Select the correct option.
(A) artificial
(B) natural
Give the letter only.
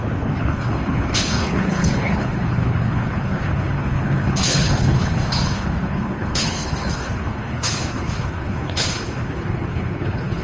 A